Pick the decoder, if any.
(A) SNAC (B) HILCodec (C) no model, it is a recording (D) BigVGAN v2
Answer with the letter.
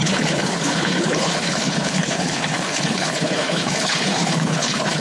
B